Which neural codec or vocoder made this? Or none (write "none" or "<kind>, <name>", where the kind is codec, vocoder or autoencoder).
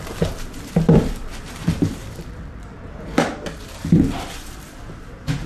vocoder, BigVGAN v2